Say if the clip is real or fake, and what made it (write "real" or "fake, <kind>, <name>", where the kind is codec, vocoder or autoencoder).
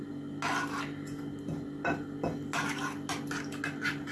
real